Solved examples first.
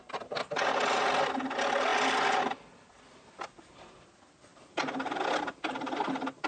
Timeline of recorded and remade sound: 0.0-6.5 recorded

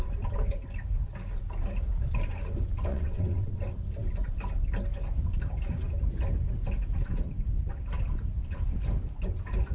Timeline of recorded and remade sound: 0.0-2.9 recorded; 2.9-3.6 remade; 3.6-9.7 recorded

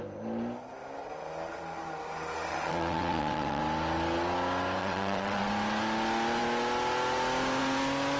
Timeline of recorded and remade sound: 0.0-2.5 recorded; 2.5-3.6 remade; 3.6-4.8 recorded; 4.8-5.5 remade; 5.5-8.2 recorded

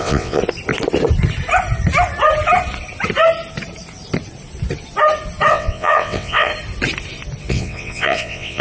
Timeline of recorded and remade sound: 0.0-0.4 remade; 0.4-5.5 recorded; 5.5-6.5 remade; 6.5-7.5 recorded; 7.5-8.6 remade

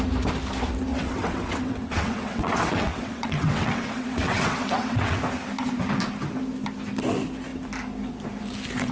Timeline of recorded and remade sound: 0.0-0.9 recorded; 0.9-5.2 remade; 5.2-8.9 recorded

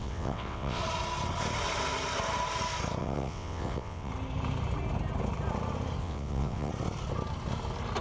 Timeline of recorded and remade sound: 0.0-0.8 remade; 0.8-3.0 recorded; 3.0-4.1 remade; 4.1-6.0 recorded; 6.0-6.7 remade; 6.7-8.0 recorded

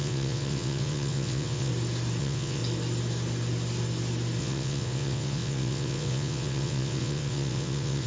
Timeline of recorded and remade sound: 0.0-1.7 remade; 1.7-2.2 recorded; 2.2-2.6 remade; 2.6-4.4 recorded; 4.4-8.1 remade

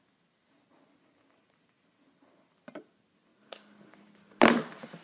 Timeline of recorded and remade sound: 0.0-5.0 recorded